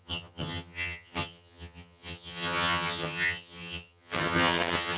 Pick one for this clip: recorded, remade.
remade